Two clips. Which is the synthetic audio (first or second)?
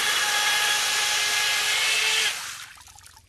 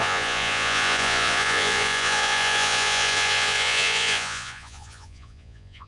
second